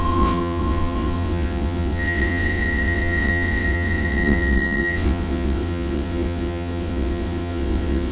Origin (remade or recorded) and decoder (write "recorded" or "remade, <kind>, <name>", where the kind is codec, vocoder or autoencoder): remade, vocoder, WaveNeXt